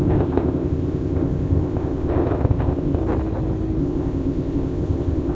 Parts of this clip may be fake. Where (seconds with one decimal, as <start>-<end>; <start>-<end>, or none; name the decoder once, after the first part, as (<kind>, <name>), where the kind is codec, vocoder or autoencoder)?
0.0-3.0 (codec, ZipCodec); 3.8-5.3